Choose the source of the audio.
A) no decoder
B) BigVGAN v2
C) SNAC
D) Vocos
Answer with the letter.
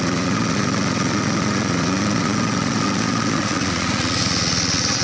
D